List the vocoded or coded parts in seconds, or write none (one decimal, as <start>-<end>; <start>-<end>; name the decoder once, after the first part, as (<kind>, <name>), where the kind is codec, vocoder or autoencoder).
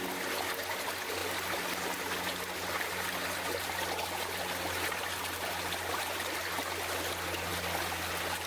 none